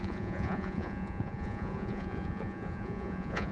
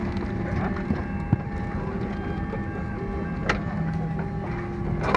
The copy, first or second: first